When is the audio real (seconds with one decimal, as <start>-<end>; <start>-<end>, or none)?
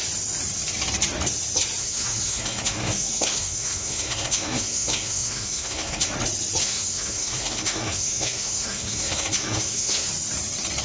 0.0-1.8; 6.1-6.6; 10.1-10.8